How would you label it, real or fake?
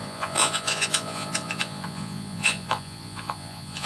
fake